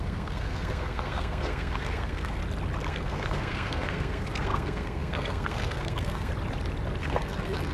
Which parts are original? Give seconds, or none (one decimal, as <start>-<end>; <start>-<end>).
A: 2.4-2.9; 6.3-7.0